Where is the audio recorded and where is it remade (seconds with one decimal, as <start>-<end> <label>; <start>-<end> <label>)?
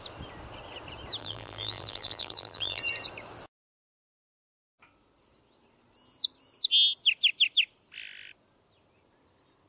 0.0-1.2 recorded; 1.2-2.8 remade; 2.8-9.7 recorded